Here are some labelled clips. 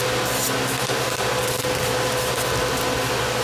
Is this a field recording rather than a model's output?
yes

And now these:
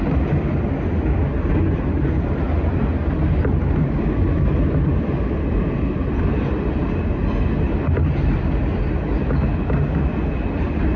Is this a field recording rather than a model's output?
yes